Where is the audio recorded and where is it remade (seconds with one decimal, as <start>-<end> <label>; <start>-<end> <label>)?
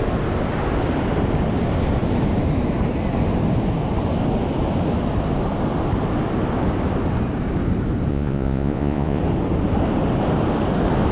0.0-8.1 recorded; 8.1-9.2 remade; 9.2-11.1 recorded